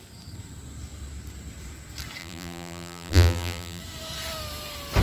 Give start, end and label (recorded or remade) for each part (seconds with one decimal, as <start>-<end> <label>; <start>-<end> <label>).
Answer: 0.0-2.2 recorded; 2.2-3.8 remade; 3.8-5.0 recorded